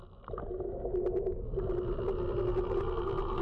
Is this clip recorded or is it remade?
recorded